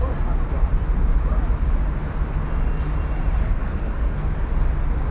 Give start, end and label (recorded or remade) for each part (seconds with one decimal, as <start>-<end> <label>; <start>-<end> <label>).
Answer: 0.0-3.4 recorded; 3.4-4.3 remade; 4.3-5.1 recorded